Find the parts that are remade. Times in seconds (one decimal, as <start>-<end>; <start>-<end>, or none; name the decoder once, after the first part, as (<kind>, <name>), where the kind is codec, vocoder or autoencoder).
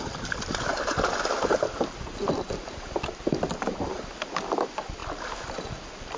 0.0-6.2 (vocoder, BigVGAN v2)